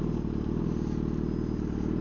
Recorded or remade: recorded